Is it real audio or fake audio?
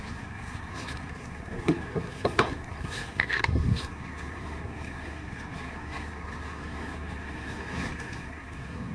fake